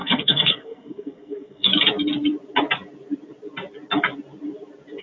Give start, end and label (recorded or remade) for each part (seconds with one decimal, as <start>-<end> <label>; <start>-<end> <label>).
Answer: 0.0-1.7 remade; 1.7-5.0 recorded